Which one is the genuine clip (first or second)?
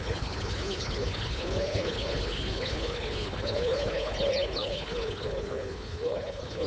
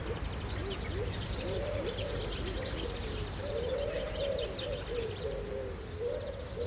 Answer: second